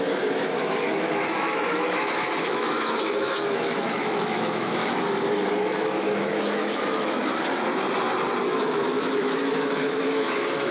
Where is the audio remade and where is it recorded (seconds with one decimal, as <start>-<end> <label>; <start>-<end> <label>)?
0.0-4.8 remade; 4.8-5.5 recorded; 5.5-7.2 remade; 7.2-8.4 recorded; 8.4-10.7 remade